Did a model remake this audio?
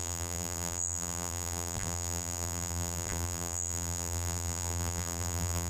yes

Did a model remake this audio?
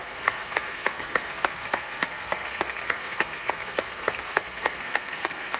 yes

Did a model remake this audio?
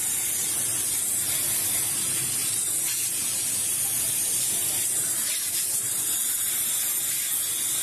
no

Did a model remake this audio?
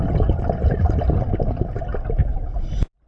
no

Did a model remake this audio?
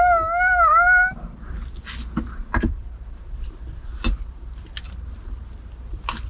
no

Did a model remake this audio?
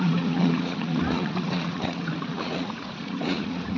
yes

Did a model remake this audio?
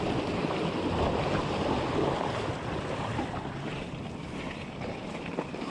no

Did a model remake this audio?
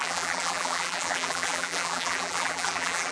yes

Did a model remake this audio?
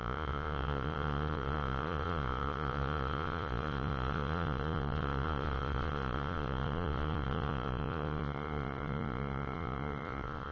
yes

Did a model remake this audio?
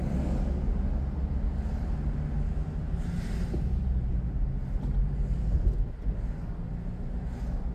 no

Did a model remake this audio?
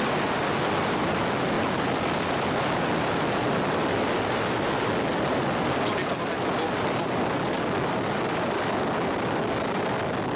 no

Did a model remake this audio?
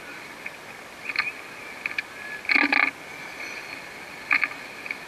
no